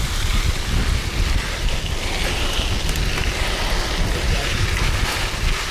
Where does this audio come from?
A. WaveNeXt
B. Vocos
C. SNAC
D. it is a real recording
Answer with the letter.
D